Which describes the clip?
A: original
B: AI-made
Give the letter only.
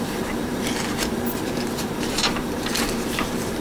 B